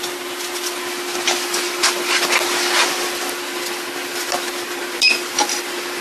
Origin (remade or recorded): recorded